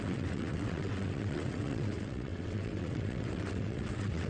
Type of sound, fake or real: fake